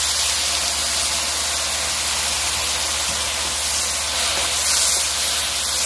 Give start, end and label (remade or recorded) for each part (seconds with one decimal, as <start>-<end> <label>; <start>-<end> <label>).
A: 0.0-5.9 recorded